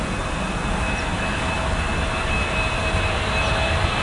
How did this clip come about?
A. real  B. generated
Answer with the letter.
A